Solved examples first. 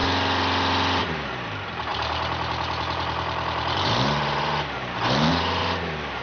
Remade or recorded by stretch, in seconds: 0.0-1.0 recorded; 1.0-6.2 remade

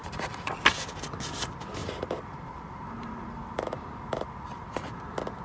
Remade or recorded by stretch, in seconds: 0.0-0.5 remade; 0.5-1.8 recorded; 1.8-5.0 remade; 5.0-5.4 recorded

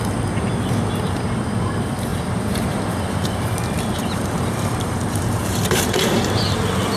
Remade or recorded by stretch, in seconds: 0.0-2.1 recorded; 2.1-6.3 remade; 6.3-7.0 recorded

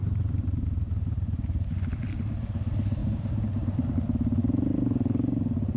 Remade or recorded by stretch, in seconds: 0.0-2.1 remade; 2.1-3.0 recorded; 3.0-3.9 remade; 3.9-5.8 recorded

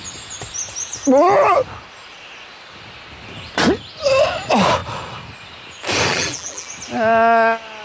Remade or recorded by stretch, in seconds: 0.0-6.1 recorded; 6.1-6.7 remade; 6.7-7.8 recorded

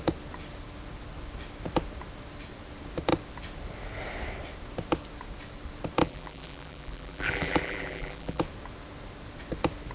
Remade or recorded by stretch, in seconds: 0.0-6.0 recorded; 6.0-8.4 remade; 8.4-9.9 recorded